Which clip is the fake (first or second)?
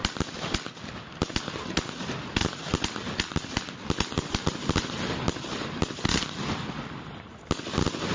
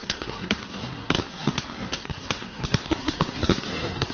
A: second